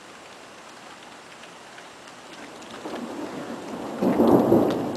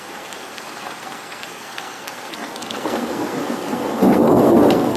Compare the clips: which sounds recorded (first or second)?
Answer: first